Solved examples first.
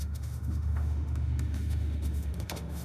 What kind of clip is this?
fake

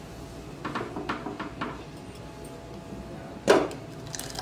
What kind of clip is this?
real